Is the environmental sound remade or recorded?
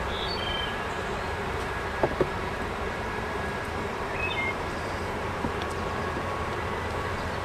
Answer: remade